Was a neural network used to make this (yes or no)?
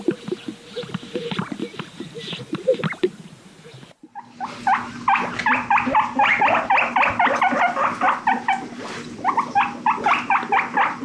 no